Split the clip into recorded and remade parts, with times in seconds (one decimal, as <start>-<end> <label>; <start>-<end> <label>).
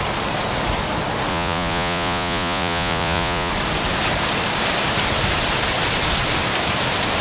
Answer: 0.0-1.3 recorded; 1.3-3.5 remade; 3.5-7.2 recorded